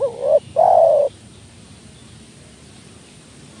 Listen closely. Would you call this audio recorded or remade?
remade